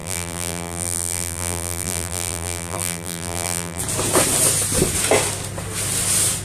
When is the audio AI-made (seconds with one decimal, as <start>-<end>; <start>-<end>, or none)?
0.0-3.8